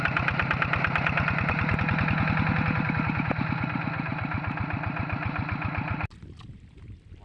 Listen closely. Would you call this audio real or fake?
real